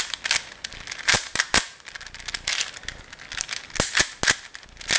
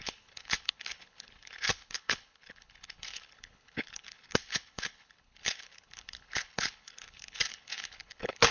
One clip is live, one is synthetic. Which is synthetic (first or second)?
second